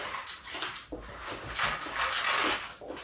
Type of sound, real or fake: real